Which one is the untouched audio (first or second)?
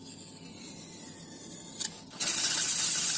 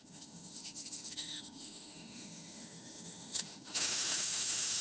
first